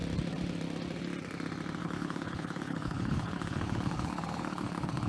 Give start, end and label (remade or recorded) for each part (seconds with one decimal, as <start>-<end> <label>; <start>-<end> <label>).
0.0-1.8 recorded; 1.8-5.1 remade